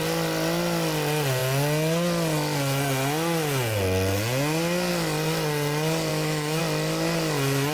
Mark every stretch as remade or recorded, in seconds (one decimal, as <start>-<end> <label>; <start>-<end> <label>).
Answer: 0.0-6.1 recorded; 6.1-6.6 remade; 6.6-7.7 recorded